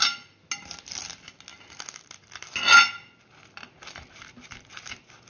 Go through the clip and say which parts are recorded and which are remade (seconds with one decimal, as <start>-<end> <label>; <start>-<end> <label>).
0.0-5.3 recorded